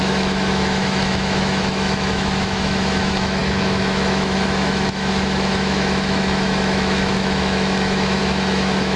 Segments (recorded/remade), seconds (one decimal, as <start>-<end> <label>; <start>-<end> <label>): 0.0-9.0 remade